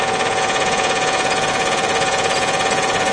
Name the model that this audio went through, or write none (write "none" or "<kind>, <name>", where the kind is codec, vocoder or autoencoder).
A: vocoder, Vocos